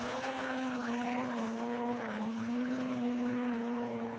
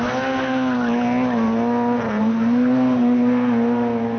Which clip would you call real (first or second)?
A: second